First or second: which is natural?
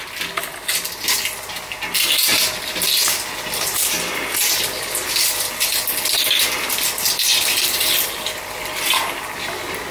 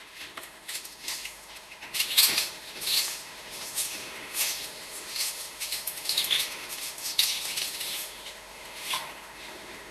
first